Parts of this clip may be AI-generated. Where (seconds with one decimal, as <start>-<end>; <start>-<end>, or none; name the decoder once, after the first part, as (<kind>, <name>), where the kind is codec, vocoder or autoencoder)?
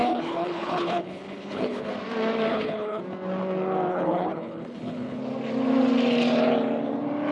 0.0-1.9 (codec, HILCodec); 2.5-3.0; 3.9-5.2